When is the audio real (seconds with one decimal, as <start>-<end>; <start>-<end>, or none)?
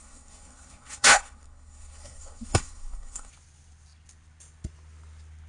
3.3-5.5